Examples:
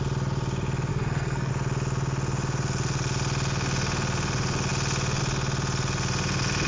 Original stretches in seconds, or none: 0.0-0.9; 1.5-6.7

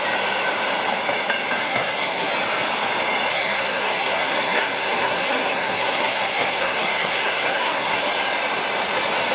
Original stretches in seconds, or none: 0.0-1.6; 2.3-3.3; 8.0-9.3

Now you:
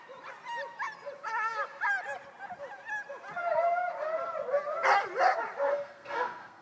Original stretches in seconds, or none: 0.0-5.7

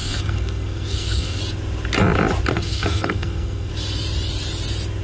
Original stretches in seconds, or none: 1.4-2.5; 3.7-5.0

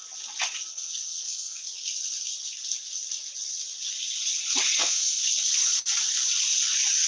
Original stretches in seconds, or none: 0.0-0.7; 1.6-4.8; 5.2-7.1

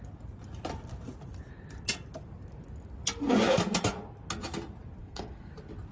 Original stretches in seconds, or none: 0.0-5.0; 5.5-5.9

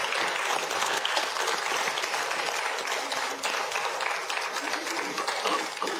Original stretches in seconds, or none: 0.0-0.8; 1.3-6.0

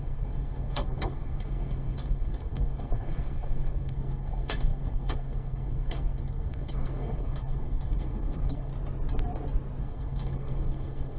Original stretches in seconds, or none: 8.7-9.8